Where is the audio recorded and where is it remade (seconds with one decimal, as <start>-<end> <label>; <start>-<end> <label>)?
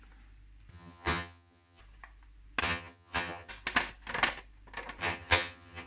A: 0.0-0.7 recorded; 0.7-1.8 remade; 1.8-2.6 recorded; 2.6-3.5 remade; 3.5-5.0 recorded; 5.0-5.9 remade